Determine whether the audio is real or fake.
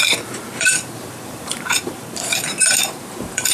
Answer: fake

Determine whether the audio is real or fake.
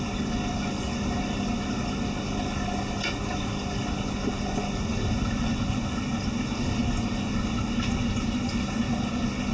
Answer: real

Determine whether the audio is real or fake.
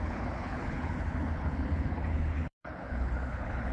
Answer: fake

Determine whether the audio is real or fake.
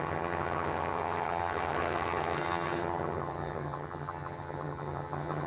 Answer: fake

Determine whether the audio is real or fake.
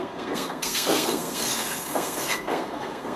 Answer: fake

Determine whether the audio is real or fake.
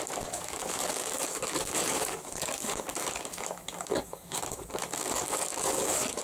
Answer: fake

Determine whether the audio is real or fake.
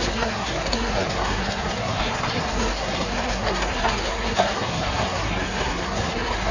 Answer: fake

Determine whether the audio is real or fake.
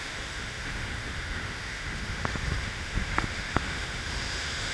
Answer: fake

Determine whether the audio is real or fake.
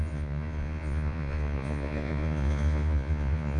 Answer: fake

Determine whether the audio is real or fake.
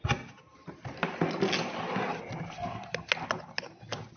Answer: real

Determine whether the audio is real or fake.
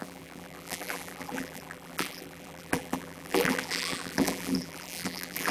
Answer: fake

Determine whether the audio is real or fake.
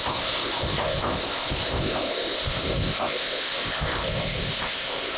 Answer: fake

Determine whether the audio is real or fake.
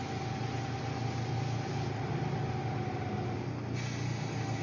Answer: real